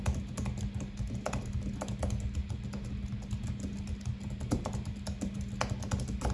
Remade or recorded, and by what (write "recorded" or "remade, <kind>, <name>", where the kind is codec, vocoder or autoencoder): recorded